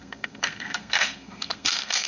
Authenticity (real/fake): fake